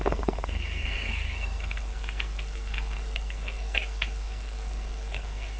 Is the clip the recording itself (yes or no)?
no